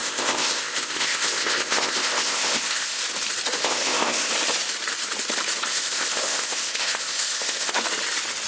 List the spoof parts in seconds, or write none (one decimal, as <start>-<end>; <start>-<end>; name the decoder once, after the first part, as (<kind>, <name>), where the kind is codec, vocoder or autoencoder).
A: 0.0-3.0 (codec, ZipCodec); 3.6-4.3; 5.7-7.7